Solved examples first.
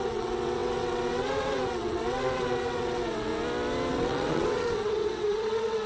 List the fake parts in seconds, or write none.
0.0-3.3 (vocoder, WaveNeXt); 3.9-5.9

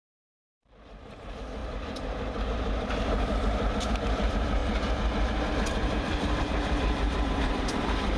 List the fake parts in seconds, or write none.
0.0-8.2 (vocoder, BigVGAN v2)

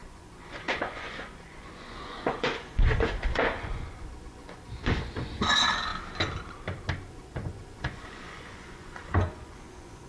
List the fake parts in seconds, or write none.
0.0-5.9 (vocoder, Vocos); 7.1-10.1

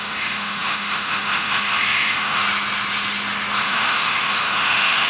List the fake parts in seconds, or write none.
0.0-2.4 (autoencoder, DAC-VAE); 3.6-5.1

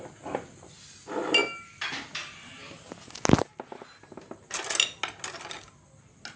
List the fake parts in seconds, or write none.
none